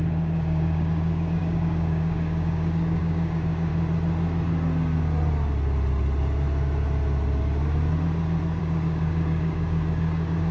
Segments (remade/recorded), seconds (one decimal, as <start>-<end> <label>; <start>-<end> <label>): 0.0-3.7 remade; 3.7-8.6 recorded; 8.6-10.5 remade